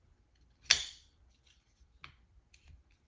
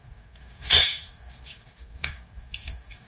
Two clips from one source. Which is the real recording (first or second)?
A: first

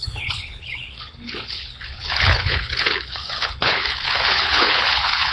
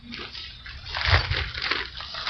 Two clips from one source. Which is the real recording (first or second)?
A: second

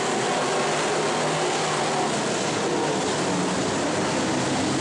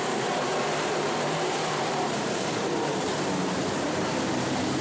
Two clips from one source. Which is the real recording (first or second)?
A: first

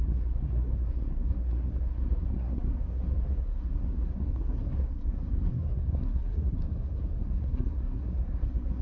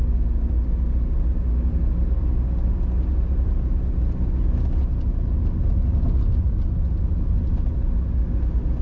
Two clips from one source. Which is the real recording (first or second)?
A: second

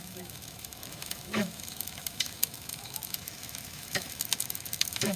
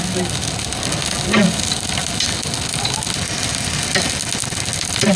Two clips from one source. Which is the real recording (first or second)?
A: second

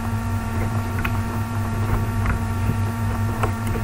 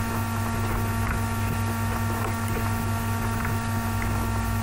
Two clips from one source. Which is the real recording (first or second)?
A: second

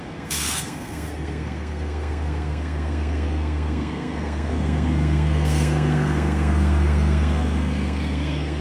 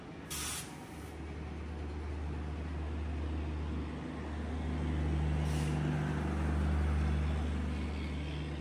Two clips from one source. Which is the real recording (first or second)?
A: second